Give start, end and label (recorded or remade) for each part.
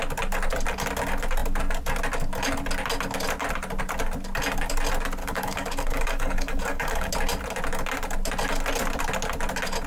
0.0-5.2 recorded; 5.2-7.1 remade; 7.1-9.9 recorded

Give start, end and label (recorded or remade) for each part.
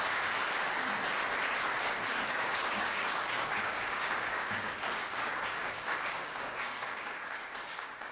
0.0-0.4 remade; 0.4-2.3 recorded; 2.3-8.1 remade